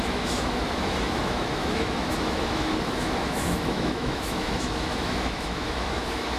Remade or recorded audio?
remade